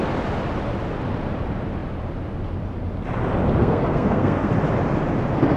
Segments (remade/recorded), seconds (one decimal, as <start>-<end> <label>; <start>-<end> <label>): 0.0-3.6 recorded; 3.6-4.5 remade; 4.5-5.6 recorded